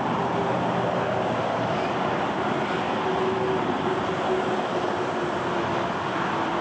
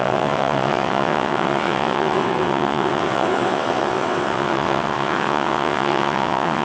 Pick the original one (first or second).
first